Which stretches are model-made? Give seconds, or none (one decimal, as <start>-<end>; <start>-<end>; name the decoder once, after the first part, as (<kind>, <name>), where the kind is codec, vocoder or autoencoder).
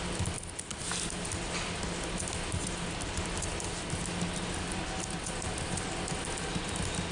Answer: none